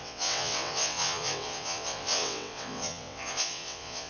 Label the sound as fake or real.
fake